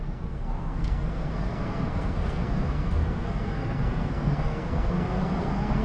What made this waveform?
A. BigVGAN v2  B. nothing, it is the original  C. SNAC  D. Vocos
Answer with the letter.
C